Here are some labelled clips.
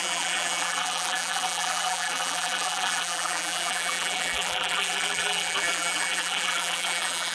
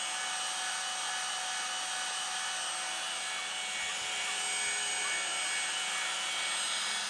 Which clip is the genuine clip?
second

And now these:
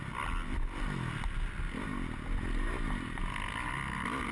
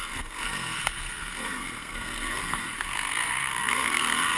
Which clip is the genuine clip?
first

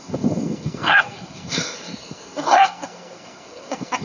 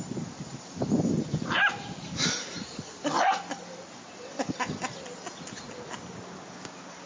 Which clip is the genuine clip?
second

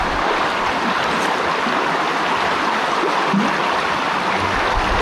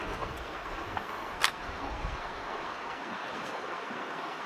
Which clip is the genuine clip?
first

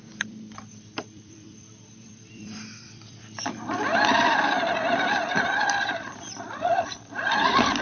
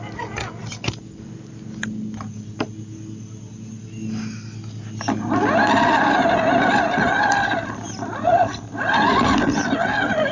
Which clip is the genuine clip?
second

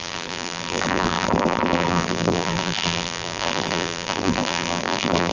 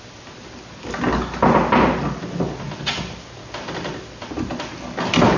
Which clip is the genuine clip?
second